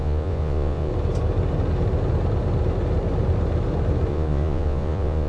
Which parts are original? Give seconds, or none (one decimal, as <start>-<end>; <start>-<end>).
0.9-4.1